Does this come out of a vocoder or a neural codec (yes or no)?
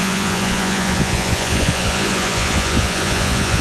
yes